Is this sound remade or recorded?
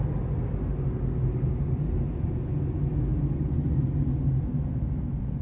recorded